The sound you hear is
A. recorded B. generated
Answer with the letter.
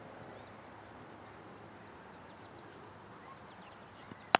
A